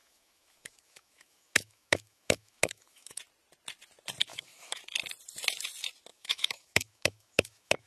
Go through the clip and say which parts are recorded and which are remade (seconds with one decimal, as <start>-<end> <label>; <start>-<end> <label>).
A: 0.0-3.2 remade; 3.2-4.3 recorded; 4.3-4.8 remade; 4.8-6.1 recorded; 6.1-7.9 remade